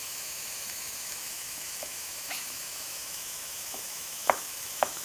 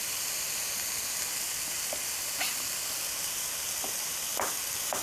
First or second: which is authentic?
second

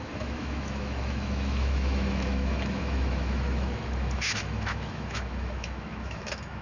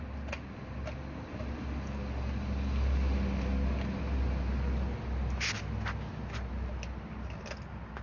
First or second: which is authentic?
second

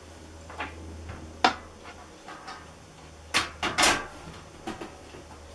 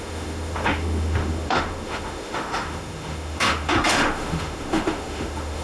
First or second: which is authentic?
first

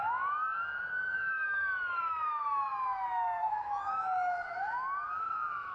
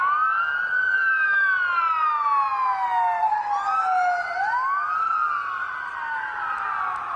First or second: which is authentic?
second